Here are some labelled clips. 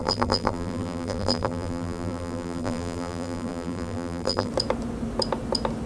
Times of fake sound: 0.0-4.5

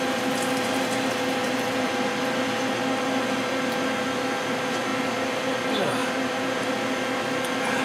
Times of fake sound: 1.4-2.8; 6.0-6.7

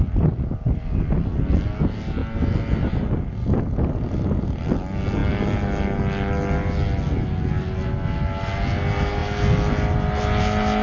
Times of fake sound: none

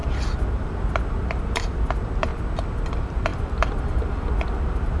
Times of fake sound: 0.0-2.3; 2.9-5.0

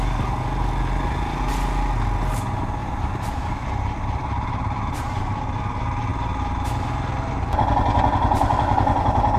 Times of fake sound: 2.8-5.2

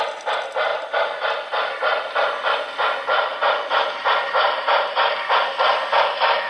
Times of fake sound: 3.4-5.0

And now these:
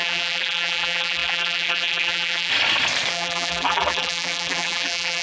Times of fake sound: 0.0-2.5; 3.1-5.2

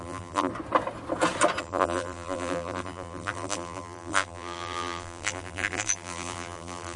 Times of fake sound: 0.0-0.5; 1.6-7.0